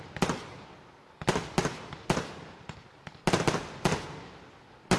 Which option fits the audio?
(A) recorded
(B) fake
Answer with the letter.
A